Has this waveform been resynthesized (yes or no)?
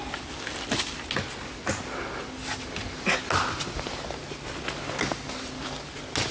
no